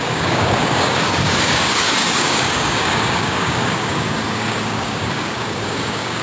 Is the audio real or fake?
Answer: fake